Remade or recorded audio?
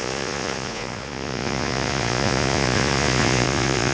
remade